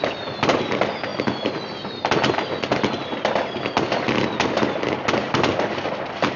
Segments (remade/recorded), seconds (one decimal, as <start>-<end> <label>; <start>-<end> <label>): 0.0-6.4 recorded